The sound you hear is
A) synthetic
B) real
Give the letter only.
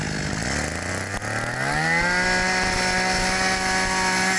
B